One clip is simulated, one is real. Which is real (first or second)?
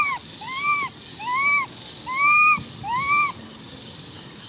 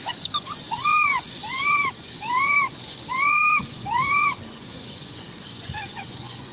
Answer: first